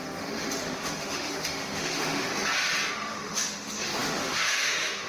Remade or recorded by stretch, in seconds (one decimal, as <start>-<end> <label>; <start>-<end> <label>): 0.0-2.3 remade; 2.3-2.9 recorded; 2.9-5.1 remade